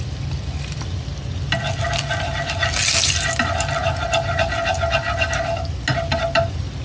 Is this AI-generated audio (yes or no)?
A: no